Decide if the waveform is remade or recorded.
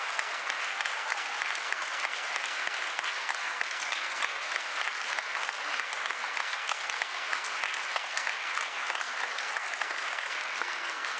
remade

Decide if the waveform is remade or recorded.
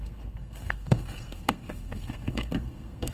remade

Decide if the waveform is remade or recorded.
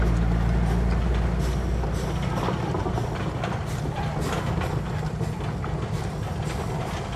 recorded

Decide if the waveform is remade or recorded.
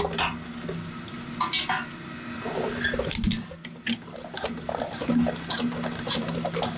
recorded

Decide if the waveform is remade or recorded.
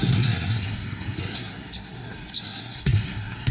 remade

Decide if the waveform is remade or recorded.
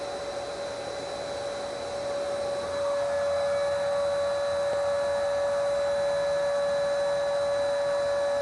recorded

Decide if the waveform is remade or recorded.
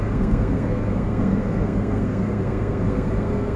remade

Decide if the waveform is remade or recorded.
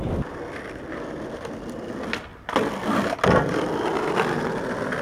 recorded